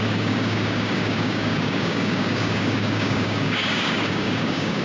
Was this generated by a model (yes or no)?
yes